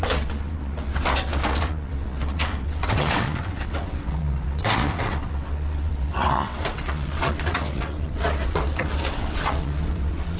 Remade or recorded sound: remade